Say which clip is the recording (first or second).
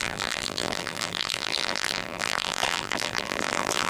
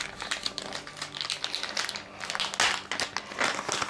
second